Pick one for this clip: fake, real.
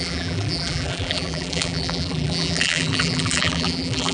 fake